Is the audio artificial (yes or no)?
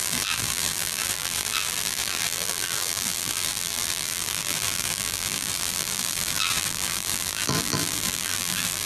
yes